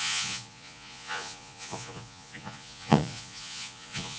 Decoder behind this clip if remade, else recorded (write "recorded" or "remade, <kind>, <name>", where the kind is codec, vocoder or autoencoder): remade, vocoder, Vocos